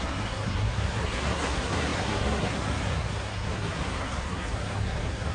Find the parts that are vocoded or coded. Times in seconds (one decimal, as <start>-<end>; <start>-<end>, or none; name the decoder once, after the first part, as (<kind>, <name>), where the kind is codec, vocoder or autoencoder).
0.0-5.3 (codec, SNAC)